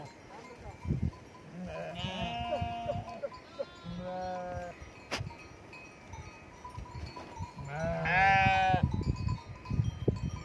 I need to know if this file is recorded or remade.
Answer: recorded